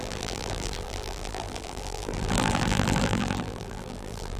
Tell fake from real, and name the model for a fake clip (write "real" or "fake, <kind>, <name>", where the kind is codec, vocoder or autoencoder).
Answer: fake, vocoder, BigVGAN v2